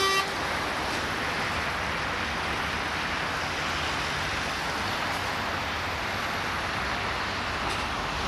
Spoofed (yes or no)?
no